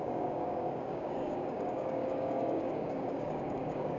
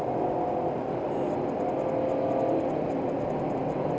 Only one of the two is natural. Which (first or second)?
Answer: second